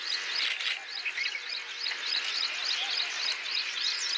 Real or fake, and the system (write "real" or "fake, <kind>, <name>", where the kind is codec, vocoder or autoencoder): real